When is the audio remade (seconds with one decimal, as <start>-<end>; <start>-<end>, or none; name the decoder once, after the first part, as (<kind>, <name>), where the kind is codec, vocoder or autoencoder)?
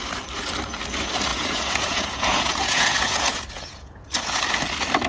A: 1.3-4.4 (vocoder, Vocos)